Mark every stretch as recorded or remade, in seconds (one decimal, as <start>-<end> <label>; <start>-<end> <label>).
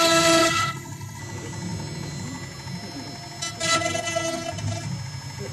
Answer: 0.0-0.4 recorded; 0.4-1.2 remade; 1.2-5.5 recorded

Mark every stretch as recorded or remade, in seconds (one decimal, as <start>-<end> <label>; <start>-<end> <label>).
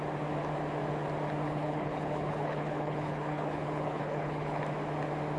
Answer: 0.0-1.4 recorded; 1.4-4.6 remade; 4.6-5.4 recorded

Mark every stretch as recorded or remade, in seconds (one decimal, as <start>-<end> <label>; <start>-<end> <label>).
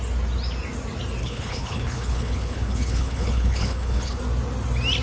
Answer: 0.0-1.2 recorded; 1.2-4.2 remade; 4.2-5.0 recorded